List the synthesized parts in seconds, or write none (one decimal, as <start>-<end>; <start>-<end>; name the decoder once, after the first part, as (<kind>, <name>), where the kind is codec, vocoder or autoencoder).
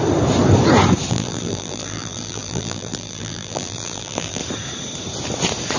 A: 1.1-4.4 (vocoder, BigVGAN v2)